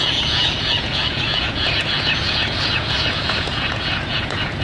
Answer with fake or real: fake